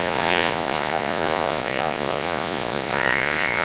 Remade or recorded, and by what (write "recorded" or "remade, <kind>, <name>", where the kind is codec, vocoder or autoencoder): remade, vocoder, Vocos